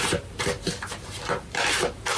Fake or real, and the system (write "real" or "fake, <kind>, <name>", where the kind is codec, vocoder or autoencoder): real